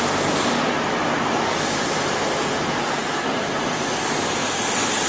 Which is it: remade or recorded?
recorded